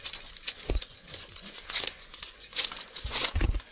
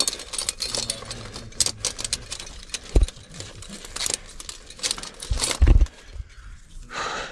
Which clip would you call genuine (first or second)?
second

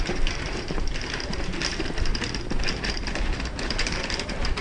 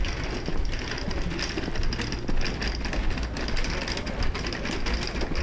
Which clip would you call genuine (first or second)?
second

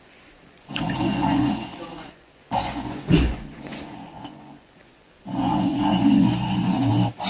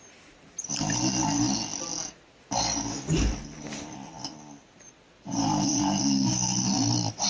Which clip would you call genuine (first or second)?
second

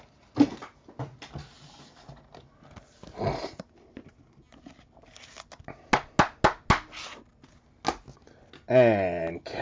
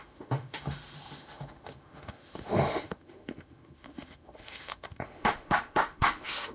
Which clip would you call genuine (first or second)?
first